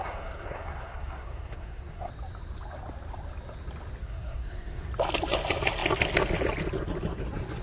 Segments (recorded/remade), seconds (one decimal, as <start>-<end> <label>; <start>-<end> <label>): 0.0-2.1 remade; 2.1-4.0 recorded; 4.0-4.9 remade; 4.9-7.6 recorded